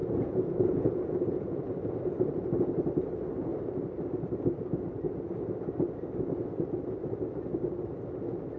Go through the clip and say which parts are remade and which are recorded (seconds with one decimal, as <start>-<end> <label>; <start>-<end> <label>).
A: 0.0-1.6 remade; 1.6-8.6 recorded